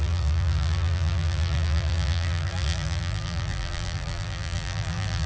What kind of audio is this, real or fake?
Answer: fake